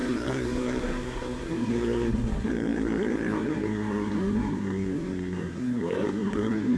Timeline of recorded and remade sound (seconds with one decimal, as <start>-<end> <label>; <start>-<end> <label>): 0.0-6.8 remade